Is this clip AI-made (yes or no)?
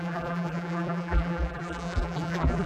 yes